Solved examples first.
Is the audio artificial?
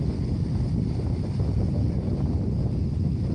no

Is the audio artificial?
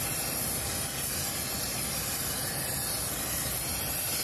no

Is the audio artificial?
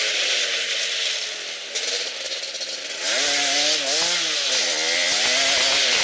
no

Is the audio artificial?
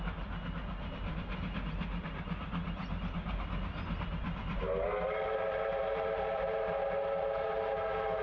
no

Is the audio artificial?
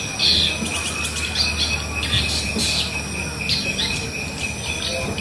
no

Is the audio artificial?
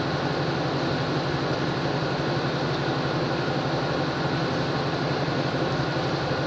no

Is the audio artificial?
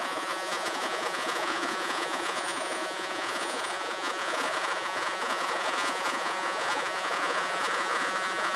yes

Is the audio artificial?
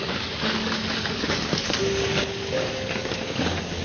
yes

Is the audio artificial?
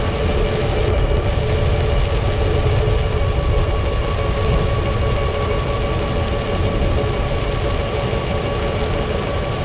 no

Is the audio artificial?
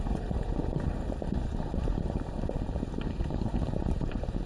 yes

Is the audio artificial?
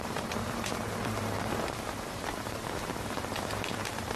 yes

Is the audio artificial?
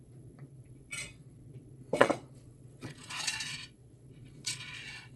yes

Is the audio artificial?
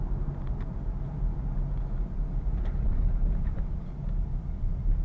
no